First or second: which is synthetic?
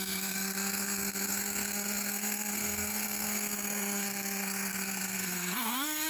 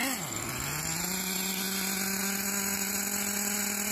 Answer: first